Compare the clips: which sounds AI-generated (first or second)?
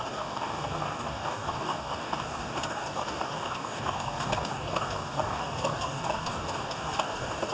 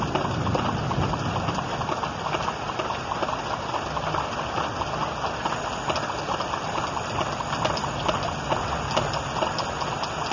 first